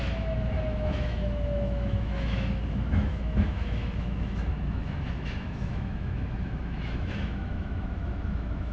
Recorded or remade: remade